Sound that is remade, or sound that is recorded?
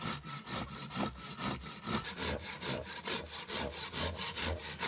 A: recorded